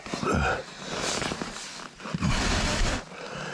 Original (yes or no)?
no